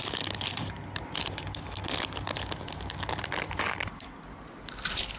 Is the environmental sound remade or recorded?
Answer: recorded